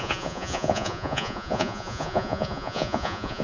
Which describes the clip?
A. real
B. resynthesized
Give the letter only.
B